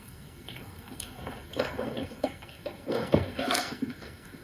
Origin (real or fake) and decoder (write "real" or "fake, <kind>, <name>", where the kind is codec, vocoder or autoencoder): fake, codec, SNAC